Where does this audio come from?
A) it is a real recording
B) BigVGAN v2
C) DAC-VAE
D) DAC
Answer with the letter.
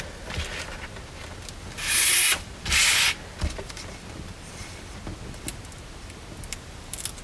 A